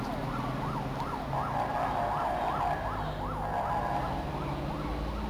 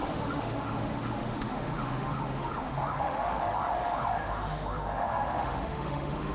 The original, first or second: first